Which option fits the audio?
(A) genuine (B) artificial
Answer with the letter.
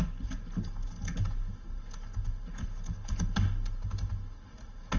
A